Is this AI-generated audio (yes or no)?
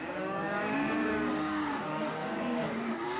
yes